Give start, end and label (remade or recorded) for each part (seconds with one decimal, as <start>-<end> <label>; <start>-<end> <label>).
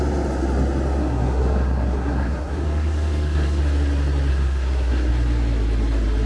0.0-1.0 recorded; 1.0-3.6 remade; 3.6-4.3 recorded; 4.3-5.1 remade; 5.1-6.3 recorded